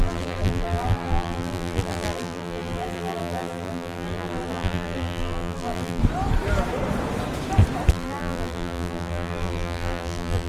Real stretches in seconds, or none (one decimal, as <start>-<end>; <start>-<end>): 6.0-7.9